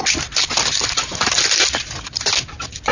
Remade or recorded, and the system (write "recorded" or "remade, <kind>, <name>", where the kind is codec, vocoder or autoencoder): recorded